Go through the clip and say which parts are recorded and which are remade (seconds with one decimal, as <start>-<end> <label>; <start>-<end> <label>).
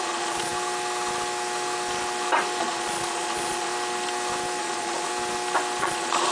0.0-0.5 remade; 0.5-2.6 recorded; 2.6-3.7 remade; 3.7-4.6 recorded; 4.6-5.1 remade; 5.1-5.8 recorded; 5.8-6.3 remade